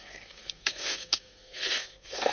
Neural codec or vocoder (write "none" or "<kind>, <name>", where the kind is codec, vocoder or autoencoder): codec, SNAC